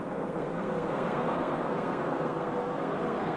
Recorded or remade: remade